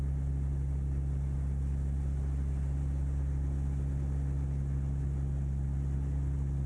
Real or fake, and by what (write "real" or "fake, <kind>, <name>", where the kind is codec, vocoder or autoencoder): real